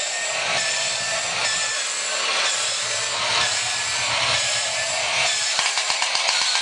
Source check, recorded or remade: recorded